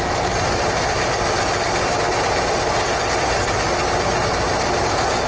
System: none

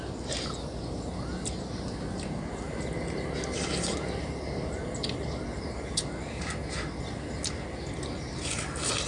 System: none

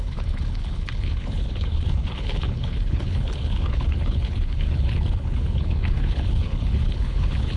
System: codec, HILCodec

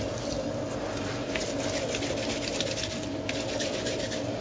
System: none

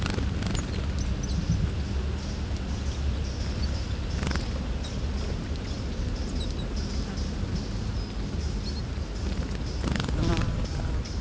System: none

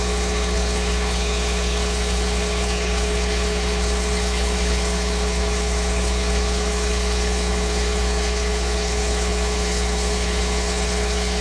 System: codec, HILCodec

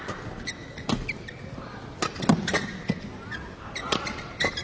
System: none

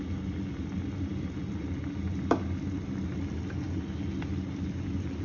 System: none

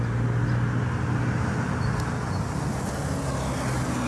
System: none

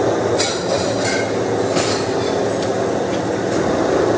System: none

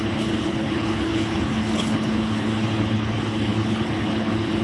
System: codec, HILCodec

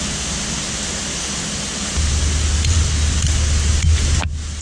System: none